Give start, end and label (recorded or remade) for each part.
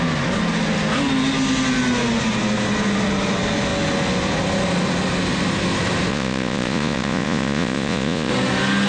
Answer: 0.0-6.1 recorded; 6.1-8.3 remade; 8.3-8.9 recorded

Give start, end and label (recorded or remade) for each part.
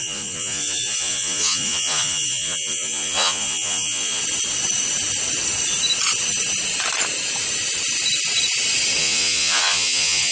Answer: 0.0-4.2 remade; 4.2-9.0 recorded; 9.0-10.3 remade